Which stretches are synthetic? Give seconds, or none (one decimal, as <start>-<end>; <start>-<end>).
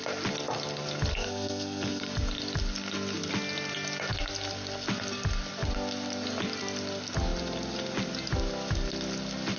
1.1-2.1